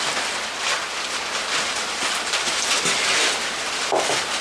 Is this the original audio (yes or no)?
no